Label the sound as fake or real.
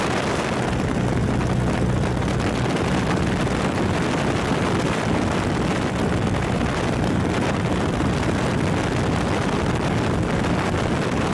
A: real